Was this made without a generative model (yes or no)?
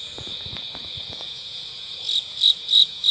no